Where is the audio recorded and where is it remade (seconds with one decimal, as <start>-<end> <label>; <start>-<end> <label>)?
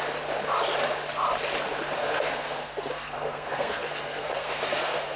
0.0-2.0 recorded; 2.0-5.2 remade